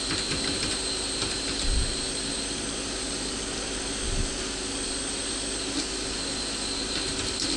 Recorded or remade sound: recorded